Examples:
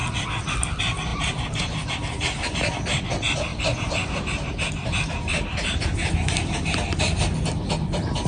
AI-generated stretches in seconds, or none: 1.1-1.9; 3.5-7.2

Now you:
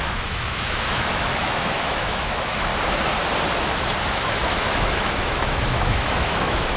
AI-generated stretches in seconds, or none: 0.0-2.7; 4.1-6.8

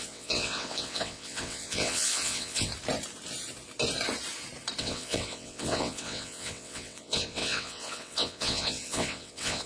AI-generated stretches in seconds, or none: 0.0-2.7; 4.8-9.7

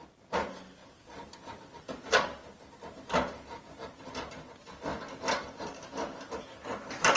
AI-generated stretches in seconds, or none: none

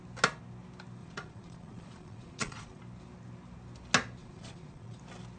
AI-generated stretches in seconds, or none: 1.0-2.8; 4.2-5.0

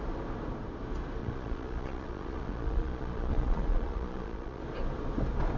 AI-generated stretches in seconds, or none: 1.2-4.6

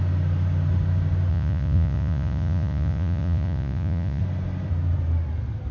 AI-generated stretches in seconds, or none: 1.3-4.2